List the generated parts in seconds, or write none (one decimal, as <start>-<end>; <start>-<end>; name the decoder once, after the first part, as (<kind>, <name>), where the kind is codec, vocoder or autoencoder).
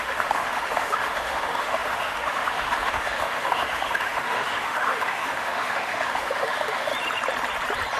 0.0-6.9 (autoencoder, DAC-VAE)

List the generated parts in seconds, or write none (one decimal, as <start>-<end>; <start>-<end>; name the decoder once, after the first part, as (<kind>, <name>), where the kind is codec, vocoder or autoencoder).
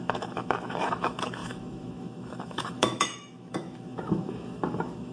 0.0-5.1 (autoencoder, DAC-VAE)